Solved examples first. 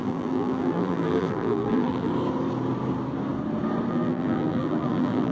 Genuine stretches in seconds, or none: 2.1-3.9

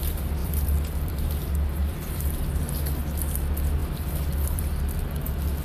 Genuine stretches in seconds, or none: 0.0-0.4; 1.3-1.8; 2.7-3.8; 4.8-5.6